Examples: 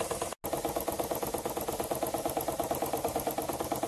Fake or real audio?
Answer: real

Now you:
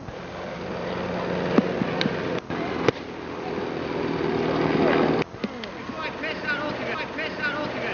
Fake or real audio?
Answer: real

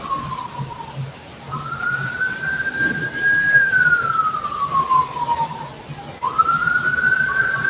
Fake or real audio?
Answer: real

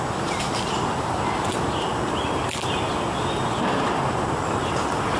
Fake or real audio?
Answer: real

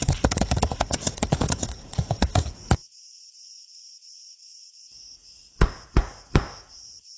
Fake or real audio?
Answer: fake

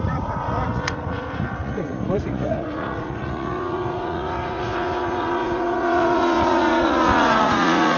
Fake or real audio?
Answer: fake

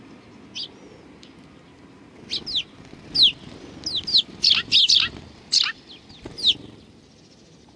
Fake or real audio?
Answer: real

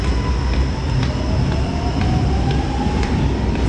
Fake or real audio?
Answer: real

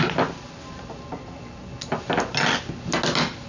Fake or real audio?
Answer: real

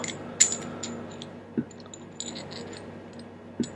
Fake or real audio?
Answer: real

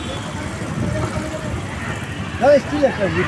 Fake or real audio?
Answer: real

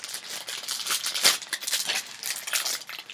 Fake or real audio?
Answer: real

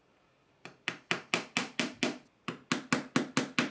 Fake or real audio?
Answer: real